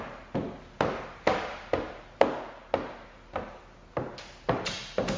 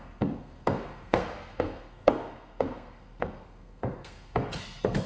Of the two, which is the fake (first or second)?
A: second